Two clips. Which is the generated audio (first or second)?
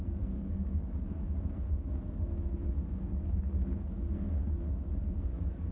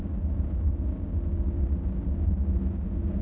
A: first